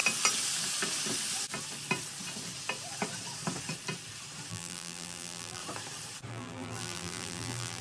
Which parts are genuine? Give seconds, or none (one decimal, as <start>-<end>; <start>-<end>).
0.0-4.5; 5.6-6.3